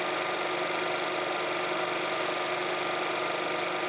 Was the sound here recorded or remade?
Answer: recorded